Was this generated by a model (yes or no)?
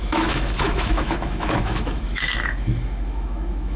yes